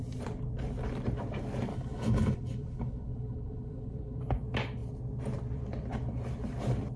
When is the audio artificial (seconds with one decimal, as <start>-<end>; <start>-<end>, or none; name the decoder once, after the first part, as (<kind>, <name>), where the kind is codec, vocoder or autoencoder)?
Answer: 1.7-4.2 (codec, HILCodec)